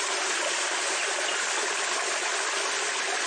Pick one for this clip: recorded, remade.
recorded